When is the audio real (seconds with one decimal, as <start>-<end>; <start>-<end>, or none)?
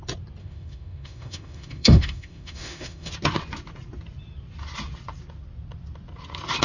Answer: 0.0-0.4; 3.1-6.6